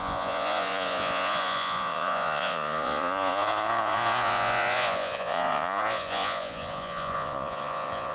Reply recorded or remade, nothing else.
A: remade